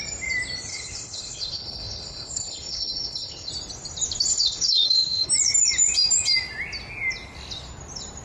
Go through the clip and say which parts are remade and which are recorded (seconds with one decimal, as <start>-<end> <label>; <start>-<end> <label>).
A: 0.0-0.7 recorded; 0.7-3.5 remade; 3.5-4.3 recorded; 4.3-5.3 remade; 5.3-8.2 recorded